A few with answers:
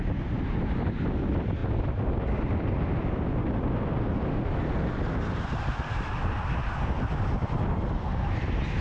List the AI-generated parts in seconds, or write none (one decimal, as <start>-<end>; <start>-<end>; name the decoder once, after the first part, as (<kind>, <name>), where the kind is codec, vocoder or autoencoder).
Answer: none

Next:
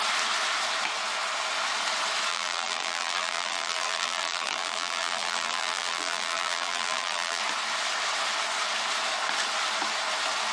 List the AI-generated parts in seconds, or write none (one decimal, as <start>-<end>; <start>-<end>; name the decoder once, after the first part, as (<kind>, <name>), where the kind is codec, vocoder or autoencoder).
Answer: 2.3-7.4 (vocoder, BigVGAN v2)

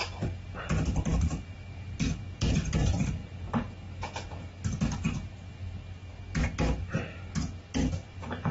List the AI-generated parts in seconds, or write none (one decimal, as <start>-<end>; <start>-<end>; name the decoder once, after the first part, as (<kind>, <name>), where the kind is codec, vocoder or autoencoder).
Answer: 0.6-3.2 (vocoder, BigVGAN v2); 7.9-8.5

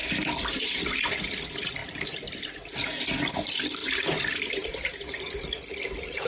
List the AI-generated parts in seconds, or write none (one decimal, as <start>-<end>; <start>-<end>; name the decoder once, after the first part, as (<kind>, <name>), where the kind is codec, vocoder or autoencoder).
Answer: 0.0-0.6 (vocoder, BigVGAN v2); 1.8-2.7; 3.8-4.7